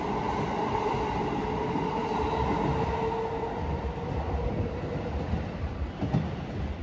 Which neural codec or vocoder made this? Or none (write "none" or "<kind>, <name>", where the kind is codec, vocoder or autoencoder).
none